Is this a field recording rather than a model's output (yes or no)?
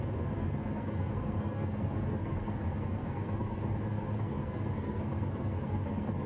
no